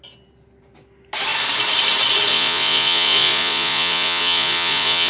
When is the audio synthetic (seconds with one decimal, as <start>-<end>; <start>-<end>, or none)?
2.3-5.1